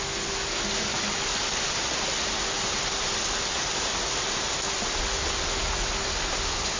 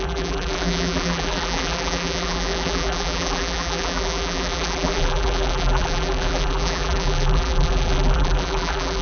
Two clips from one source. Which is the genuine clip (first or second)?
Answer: first